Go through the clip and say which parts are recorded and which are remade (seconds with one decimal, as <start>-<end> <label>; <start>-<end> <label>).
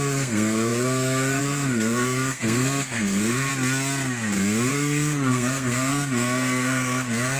0.0-3.5 remade; 3.5-4.7 recorded; 4.7-7.4 remade